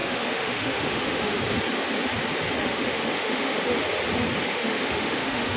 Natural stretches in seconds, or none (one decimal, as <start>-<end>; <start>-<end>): 1.4-2.6; 3.6-4.5